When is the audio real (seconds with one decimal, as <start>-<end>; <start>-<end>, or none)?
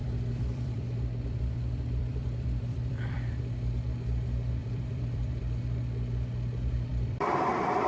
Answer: 3.4-4.6; 5.4-6.9; 7.5-7.9